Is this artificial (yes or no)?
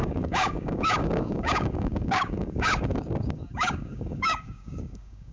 yes